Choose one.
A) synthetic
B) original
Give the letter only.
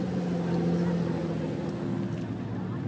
B